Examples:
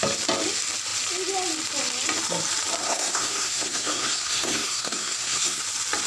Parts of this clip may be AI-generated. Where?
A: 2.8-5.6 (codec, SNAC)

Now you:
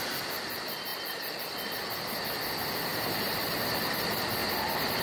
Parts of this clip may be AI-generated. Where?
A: 0.9-1.6 (vocoder, BigVGAN v2); 2.9-3.4; 4.4-5.0

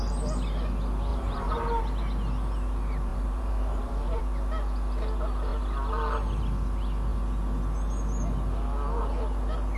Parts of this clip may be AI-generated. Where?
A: 1.1-1.8 (vocoder, BigVGAN v2); 3.1-4.2

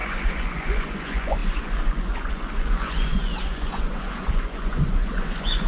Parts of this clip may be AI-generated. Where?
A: 0.0-5.7 (vocoder, Vocos)

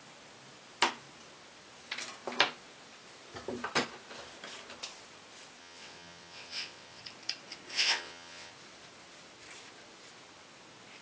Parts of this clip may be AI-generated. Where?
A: 5.6-7.0 (vocoder, WaveNeXt); 7.7-8.5

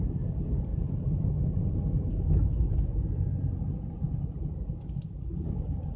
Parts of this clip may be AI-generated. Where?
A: none

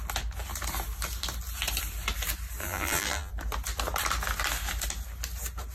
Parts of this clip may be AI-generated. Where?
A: 2.6-3.3 (vocoder, BigVGAN v2)